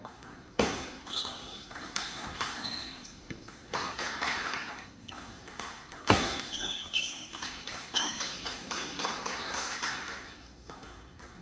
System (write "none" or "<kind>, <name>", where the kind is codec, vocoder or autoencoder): codec, SNAC